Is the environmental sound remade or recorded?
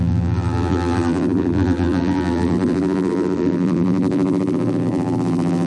remade